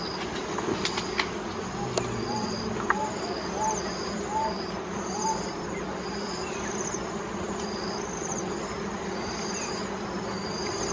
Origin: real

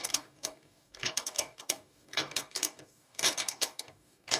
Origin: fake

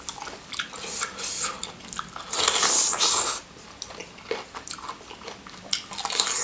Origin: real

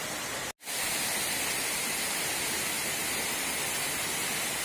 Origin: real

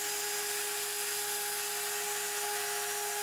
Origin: real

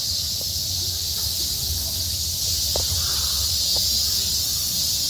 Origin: real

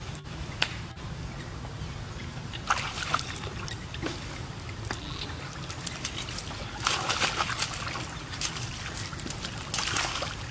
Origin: real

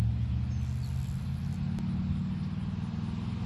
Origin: real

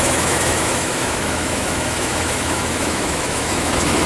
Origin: fake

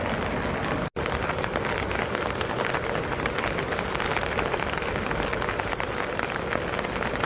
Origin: real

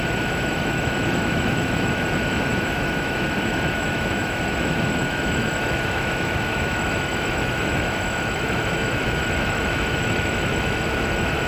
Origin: fake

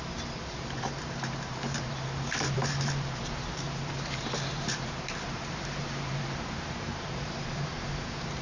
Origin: fake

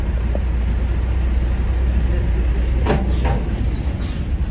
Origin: real